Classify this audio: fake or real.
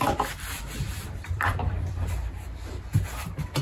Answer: fake